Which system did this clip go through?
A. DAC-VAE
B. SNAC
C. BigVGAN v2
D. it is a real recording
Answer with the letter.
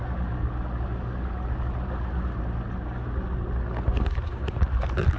D